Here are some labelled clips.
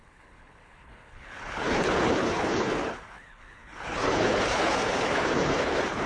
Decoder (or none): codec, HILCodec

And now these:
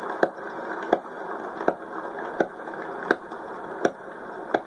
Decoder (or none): none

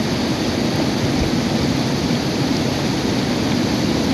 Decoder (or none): none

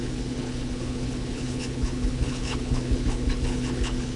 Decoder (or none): codec, HILCodec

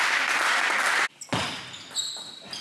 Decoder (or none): none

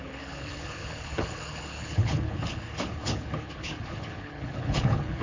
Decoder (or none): codec, HILCodec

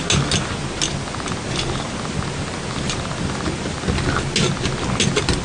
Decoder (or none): none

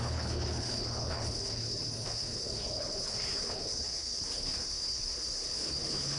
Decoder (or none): codec, HILCodec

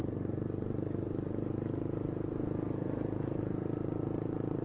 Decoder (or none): none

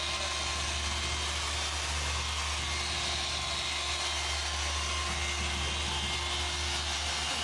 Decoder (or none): none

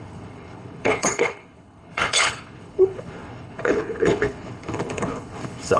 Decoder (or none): codec, HILCodec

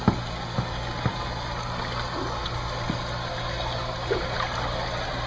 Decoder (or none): none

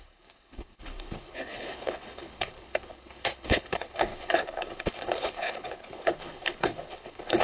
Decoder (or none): codec, HILCodec